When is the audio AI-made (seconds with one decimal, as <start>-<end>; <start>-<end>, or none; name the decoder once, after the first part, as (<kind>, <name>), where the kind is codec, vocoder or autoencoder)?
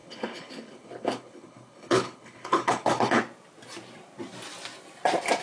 0.0-3.2 (codec, HILCodec)